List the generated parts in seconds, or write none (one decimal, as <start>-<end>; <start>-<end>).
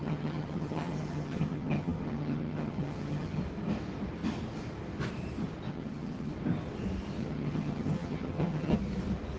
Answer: 0.0-3.4; 5.7-6.3; 7.2-8.8